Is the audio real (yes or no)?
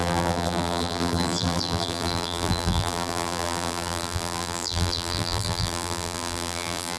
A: no